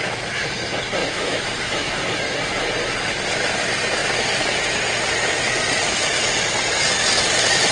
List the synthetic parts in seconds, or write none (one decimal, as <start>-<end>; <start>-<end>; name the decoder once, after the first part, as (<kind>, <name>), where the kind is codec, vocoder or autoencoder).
1.0-1.9 (autoencoder, DAC-VAE)